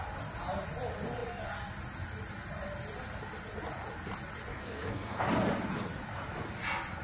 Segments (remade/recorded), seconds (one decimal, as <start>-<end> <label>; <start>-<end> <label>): 0.0-4.5 recorded; 4.5-5.3 remade; 5.3-7.0 recorded